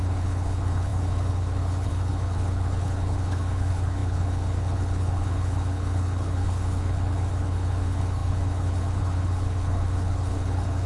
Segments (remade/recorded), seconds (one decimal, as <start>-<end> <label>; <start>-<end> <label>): 0.0-10.9 remade